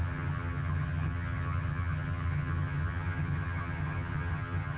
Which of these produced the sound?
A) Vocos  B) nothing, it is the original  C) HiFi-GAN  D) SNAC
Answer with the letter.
C